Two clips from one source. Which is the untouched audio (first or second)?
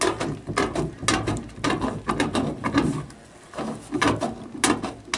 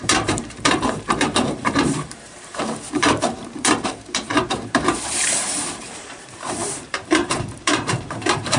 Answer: first